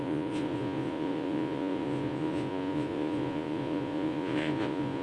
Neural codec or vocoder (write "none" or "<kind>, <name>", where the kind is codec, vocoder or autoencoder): vocoder, Vocos